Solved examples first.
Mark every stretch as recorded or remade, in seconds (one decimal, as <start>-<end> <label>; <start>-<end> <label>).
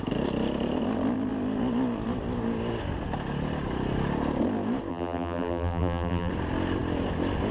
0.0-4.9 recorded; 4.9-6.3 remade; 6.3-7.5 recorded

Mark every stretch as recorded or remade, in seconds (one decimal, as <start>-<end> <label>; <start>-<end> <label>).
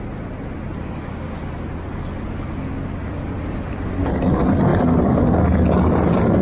0.0-6.4 recorded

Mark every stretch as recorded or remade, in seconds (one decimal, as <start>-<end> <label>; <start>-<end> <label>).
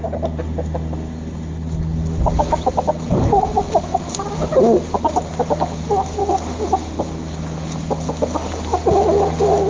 0.0-9.7 recorded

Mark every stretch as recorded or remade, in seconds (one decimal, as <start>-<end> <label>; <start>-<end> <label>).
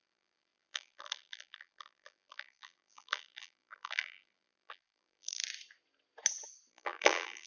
0.0-5.4 remade; 5.4-6.7 recorded; 6.7-7.5 remade